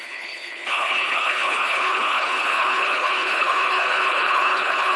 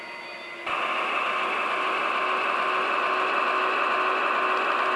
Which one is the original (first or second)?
second